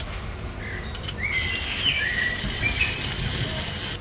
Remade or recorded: recorded